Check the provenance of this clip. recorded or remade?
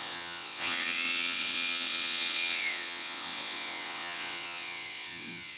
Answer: remade